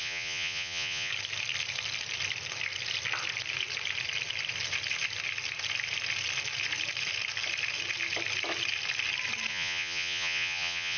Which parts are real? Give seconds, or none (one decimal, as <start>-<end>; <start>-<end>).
1.1-9.5